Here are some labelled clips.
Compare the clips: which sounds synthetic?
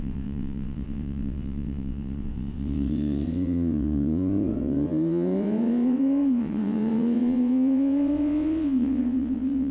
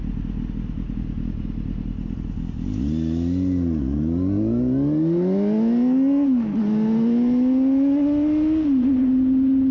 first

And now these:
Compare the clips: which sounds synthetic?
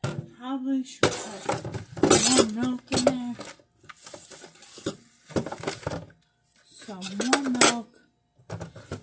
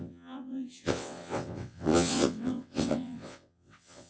second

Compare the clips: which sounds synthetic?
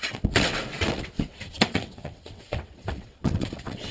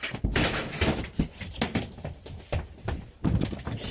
first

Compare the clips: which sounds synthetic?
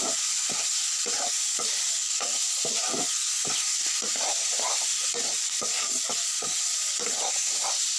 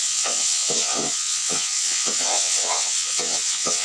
second